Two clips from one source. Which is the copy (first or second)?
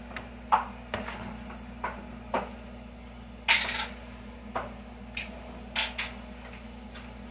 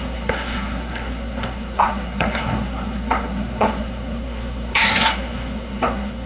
second